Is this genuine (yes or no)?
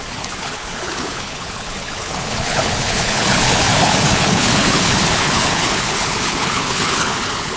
no